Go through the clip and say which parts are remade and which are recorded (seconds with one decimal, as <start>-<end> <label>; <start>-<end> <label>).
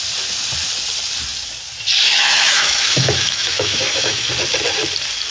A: 0.0-2.0 recorded; 2.0-4.3 remade; 4.3-5.3 recorded